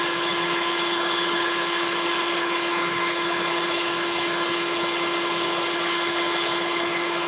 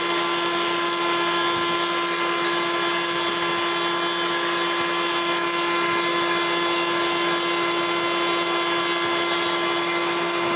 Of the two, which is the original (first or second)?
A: second